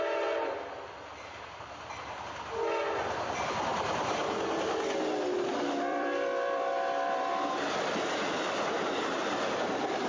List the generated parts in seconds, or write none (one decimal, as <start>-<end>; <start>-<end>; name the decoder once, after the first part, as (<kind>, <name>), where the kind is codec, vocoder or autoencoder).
5.9-10.1 (vocoder, BigVGAN v2)